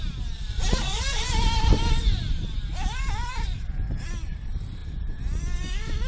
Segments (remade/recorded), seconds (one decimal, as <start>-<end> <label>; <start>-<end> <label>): 0.0-6.1 recorded